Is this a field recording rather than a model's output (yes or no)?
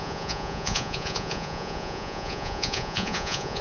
no